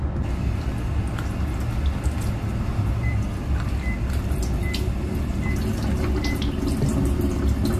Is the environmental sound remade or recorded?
recorded